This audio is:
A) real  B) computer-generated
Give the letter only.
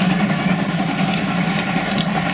A